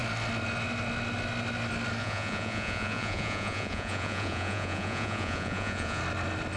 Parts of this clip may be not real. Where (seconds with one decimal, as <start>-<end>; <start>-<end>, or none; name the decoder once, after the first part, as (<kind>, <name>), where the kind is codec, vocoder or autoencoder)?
2.0-6.0 (vocoder, Vocos)